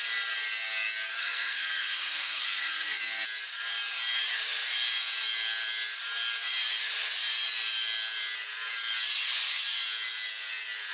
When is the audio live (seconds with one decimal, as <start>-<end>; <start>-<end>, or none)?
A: 0.0-1.2; 3.0-10.9